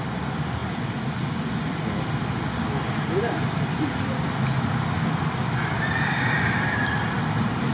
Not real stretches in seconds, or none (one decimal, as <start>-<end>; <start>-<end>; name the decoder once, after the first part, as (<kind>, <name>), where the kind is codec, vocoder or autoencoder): none